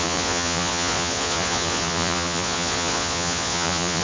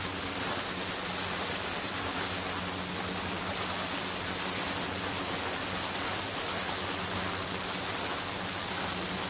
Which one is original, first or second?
second